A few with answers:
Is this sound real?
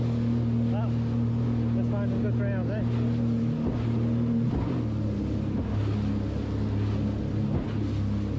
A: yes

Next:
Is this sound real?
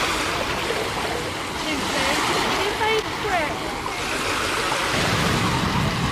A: yes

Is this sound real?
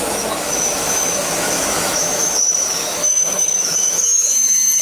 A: no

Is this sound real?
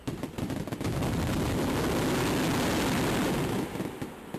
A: yes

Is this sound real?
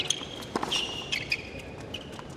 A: yes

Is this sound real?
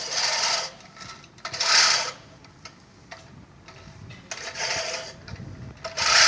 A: yes